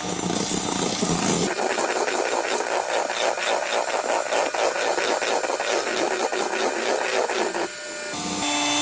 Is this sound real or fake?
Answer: real